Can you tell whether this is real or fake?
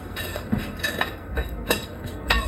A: fake